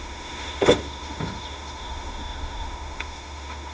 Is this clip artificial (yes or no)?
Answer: yes